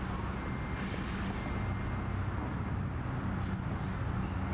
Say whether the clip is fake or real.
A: real